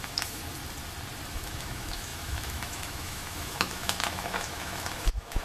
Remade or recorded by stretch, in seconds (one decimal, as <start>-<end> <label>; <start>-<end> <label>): 0.0-0.4 remade; 0.4-1.3 recorded; 1.3-5.4 remade